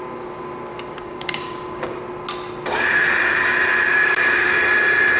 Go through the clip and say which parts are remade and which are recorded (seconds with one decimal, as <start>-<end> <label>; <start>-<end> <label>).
0.0-0.7 recorded; 0.7-2.0 remade; 2.0-3.9 recorded; 3.9-4.5 remade; 4.5-5.2 recorded